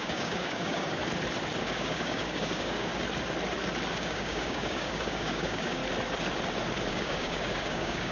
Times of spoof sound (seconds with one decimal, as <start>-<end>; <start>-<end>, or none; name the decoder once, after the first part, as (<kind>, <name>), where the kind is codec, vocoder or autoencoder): 0.0-1.0 (codec, DAC); 1.6-2.9; 3.9-5.8; 6.9-8.1